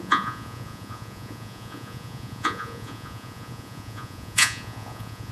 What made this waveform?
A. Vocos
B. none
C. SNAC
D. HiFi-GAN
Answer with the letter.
A